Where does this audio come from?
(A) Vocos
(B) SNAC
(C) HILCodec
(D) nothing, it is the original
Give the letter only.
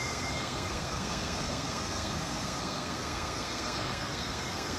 B